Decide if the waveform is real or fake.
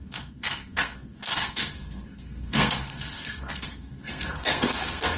fake